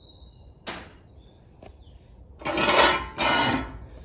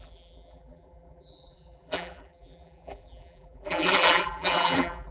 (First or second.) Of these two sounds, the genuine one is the first